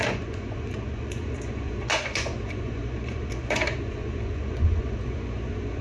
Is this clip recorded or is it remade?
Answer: remade